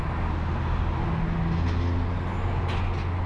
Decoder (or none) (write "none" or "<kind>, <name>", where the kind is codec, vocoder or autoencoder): none